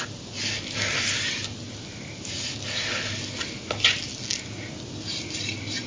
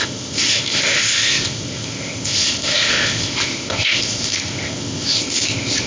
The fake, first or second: second